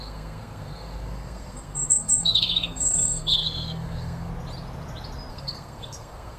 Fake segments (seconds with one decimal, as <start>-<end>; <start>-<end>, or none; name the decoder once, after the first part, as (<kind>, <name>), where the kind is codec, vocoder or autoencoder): 0.0-4.3 (codec, SNAC); 5.3-6.4